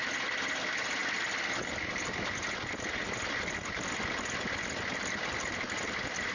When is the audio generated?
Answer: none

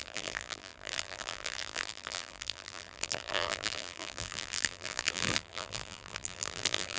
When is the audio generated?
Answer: 0.0-7.0

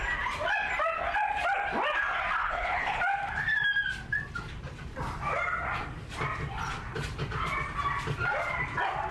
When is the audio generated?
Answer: 2.4-3.0